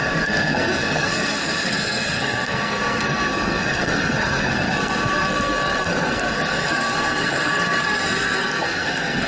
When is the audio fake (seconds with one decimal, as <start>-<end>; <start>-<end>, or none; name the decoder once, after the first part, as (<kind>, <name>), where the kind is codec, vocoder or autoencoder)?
0.0-9.3 (codec, SNAC)